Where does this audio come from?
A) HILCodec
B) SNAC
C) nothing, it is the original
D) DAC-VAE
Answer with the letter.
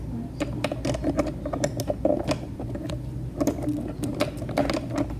C